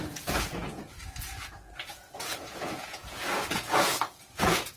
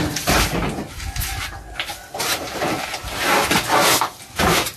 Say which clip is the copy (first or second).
first